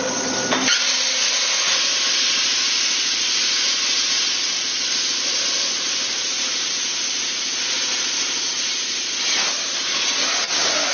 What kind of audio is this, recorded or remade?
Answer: recorded